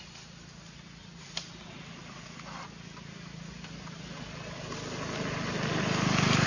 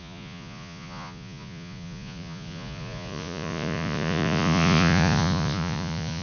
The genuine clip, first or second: first